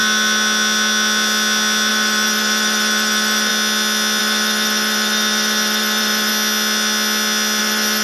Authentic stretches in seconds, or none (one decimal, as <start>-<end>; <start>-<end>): 0.0-1.9; 3.5-4.2; 6.3-7.6